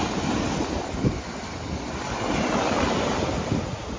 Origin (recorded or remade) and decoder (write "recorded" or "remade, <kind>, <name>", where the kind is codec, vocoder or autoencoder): recorded